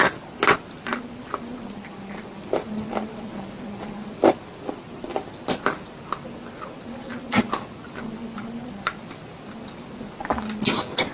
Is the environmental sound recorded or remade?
recorded